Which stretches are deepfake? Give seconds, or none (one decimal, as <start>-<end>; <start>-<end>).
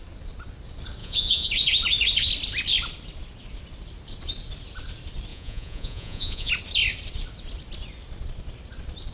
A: 1.0-1.5; 5.3-6.5